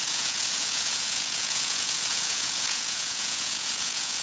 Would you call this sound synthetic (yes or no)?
yes